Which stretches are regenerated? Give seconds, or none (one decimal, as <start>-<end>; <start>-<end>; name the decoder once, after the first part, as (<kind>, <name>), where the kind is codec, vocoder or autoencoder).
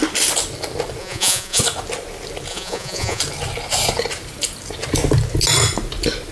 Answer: 1.0-1.6 (vocoder, Vocos); 2.5-3.2